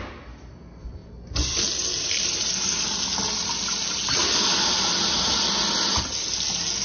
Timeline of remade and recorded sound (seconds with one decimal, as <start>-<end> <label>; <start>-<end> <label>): 0.0-6.8 recorded